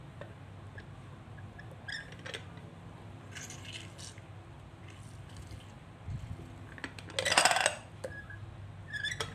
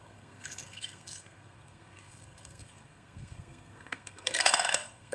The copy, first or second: second